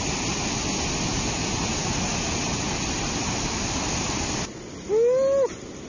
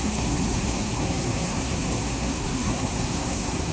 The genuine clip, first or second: first